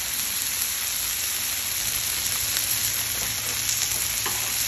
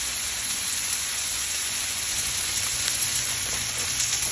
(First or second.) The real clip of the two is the first